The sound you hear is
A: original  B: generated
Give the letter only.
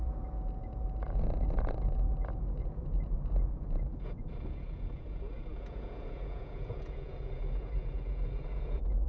B